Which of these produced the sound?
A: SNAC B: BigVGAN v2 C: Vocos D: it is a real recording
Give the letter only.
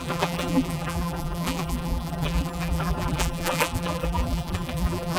B